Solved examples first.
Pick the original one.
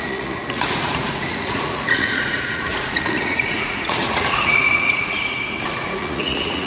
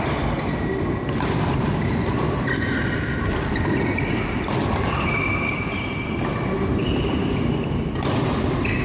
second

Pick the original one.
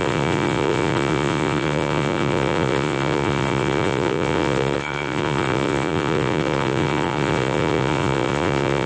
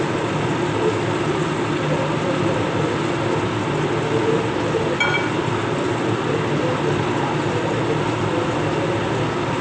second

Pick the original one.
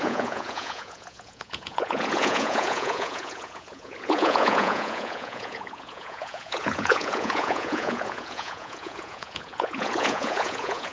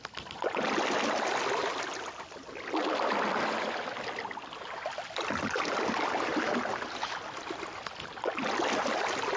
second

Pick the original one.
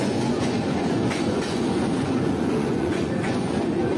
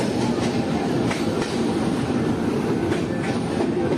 second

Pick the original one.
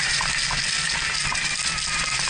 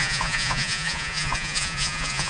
first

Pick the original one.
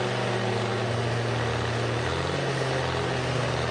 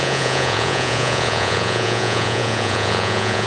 first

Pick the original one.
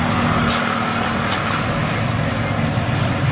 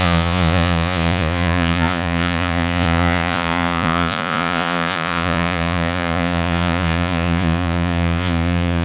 first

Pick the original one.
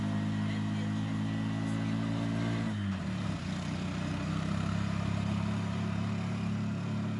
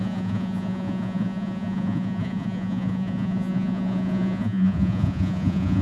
first